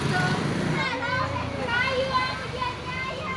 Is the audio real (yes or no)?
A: yes